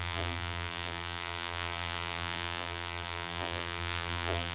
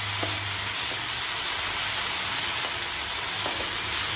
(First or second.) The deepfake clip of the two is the first